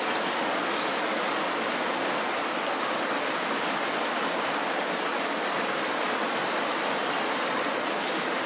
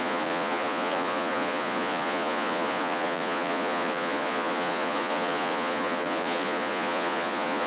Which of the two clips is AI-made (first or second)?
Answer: second